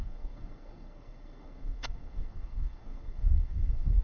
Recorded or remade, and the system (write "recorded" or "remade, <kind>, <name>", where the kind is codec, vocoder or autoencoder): remade, codec, SNAC